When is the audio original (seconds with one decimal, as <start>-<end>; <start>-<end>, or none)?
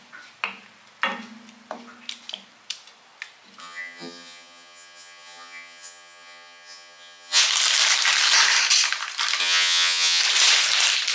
0.0-3.6; 7.4-9.4; 10.2-11.1